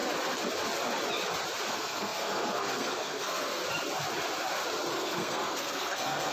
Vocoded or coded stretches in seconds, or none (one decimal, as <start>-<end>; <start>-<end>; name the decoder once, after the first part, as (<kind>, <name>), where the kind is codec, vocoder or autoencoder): 1.7-3.6 (codec, SNAC); 4.9-6.3